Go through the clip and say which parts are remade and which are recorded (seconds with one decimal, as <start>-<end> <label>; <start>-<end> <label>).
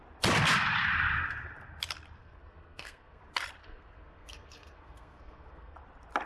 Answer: 0.0-2.2 recorded; 2.2-3.2 remade; 3.2-3.6 recorded; 3.6-5.8 remade; 5.8-6.3 recorded